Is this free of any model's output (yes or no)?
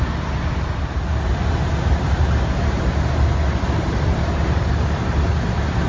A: no